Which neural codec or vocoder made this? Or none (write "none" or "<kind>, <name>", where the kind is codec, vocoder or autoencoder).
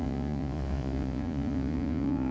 vocoder, Vocos